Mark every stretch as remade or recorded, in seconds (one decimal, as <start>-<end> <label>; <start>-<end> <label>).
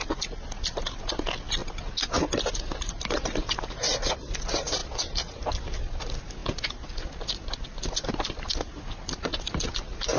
0.0-10.2 recorded